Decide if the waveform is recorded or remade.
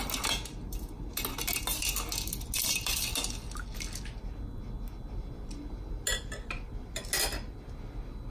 recorded